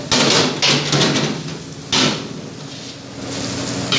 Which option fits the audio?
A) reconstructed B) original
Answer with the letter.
B